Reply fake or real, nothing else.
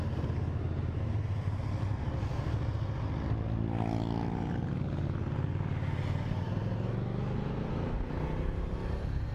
real